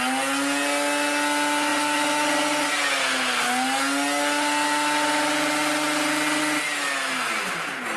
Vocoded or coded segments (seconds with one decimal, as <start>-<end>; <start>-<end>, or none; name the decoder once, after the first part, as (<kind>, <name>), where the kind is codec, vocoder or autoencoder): none